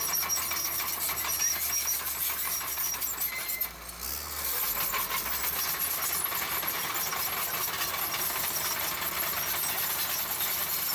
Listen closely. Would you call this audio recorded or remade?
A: recorded